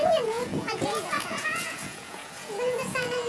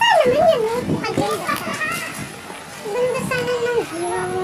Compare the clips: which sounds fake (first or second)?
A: first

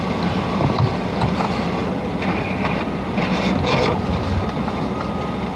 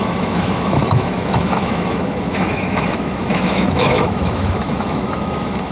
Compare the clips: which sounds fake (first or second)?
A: second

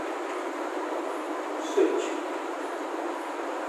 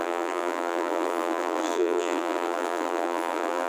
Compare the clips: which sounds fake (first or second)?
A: second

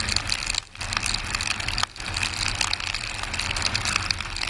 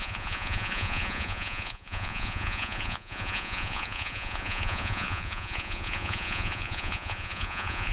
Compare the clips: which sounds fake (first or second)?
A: second